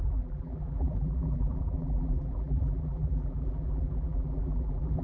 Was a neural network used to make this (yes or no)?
yes